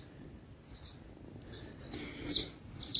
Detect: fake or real real